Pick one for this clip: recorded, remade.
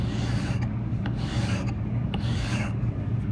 remade